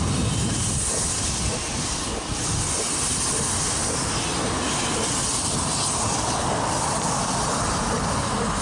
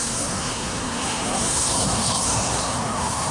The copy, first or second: second